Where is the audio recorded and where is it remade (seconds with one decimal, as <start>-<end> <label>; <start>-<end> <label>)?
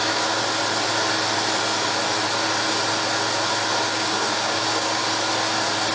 0.0-0.4 remade; 0.4-3.9 recorded; 3.9-5.0 remade; 5.0-5.9 recorded